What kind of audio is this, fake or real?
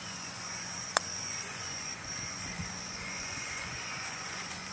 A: fake